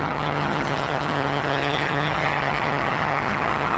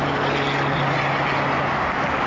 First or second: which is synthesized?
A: first